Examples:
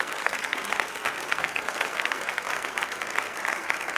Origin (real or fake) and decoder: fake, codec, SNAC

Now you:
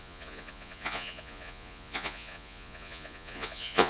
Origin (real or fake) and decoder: fake, vocoder, Vocos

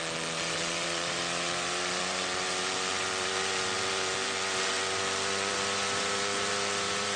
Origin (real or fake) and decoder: fake, vocoder, BigVGAN v2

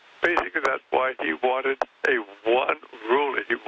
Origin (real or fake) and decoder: real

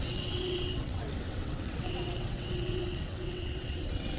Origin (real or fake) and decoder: fake, vocoder, WaveNeXt